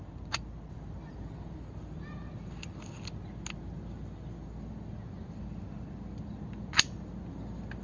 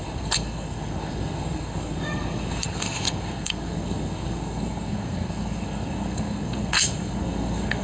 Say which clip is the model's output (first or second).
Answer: second